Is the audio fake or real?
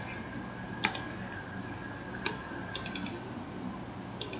real